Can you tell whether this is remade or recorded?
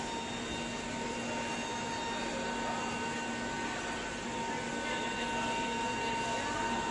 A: recorded